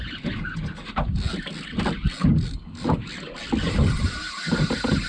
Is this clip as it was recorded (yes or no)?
yes